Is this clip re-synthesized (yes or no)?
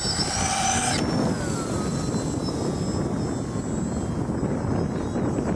no